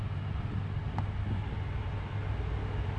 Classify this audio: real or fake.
real